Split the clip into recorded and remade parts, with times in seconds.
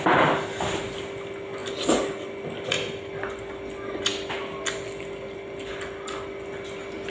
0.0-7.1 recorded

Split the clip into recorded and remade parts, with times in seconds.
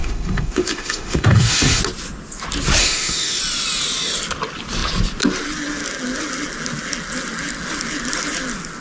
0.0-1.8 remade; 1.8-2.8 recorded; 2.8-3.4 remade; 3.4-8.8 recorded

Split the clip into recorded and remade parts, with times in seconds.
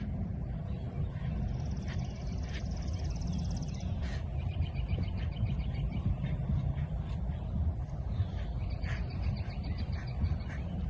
0.0-10.9 recorded